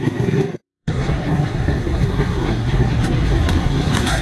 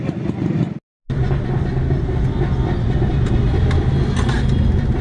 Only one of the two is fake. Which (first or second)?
first